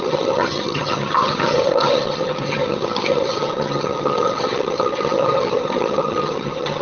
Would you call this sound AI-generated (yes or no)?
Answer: yes